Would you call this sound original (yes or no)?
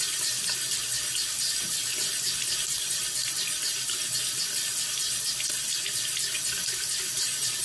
yes